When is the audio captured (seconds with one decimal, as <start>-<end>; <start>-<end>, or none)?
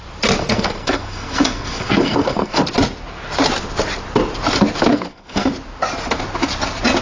0.0-0.4; 2.6-4.9; 5.5-7.0